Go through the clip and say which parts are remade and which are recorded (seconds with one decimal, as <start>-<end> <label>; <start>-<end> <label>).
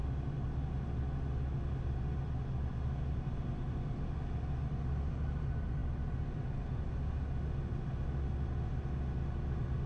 0.0-9.9 recorded